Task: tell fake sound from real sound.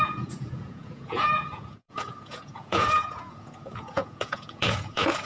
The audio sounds fake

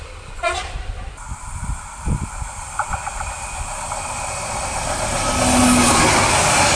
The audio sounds real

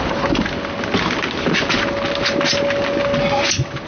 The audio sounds real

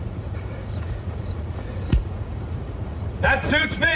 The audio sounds fake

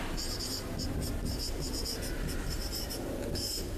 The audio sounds real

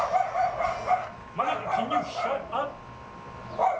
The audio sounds real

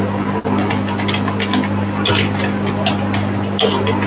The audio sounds real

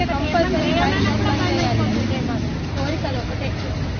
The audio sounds real